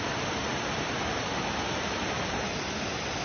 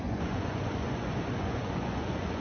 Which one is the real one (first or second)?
first